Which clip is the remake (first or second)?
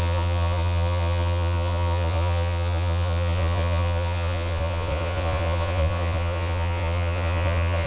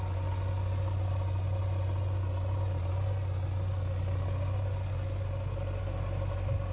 first